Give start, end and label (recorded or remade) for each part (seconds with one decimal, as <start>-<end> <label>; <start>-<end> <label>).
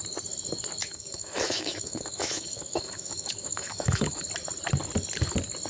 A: 0.0-0.8 recorded; 0.8-4.2 remade; 4.2-5.7 recorded